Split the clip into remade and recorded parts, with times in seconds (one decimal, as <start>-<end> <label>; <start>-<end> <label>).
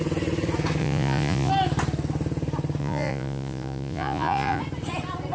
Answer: 0.0-0.8 recorded; 0.8-1.5 remade; 1.5-2.8 recorded; 2.8-4.6 remade; 4.6-5.3 recorded